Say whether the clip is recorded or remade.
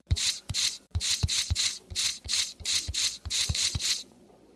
remade